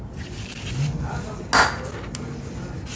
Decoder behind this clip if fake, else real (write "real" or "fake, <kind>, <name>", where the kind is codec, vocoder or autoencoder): real